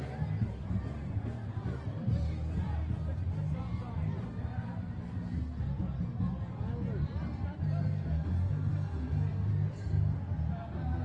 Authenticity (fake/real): real